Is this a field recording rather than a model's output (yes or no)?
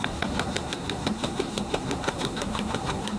no